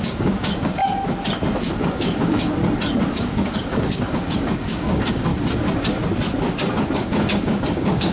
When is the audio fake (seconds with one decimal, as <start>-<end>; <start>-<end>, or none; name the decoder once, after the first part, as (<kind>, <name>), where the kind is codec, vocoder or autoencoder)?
0.0-0.8 (codec, DAC); 1.8-2.6; 3.1-5.3; 7.0-8.1